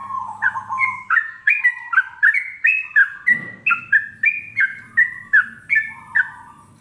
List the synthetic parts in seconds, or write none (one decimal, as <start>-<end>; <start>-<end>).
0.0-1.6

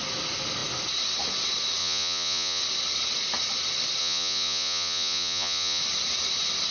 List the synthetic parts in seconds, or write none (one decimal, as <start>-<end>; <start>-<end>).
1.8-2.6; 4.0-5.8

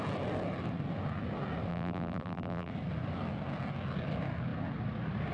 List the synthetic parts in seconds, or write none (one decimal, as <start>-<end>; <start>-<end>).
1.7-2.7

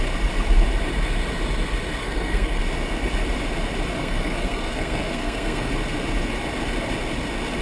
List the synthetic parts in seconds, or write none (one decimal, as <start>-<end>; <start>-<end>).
2.0-2.6; 4.0-5.7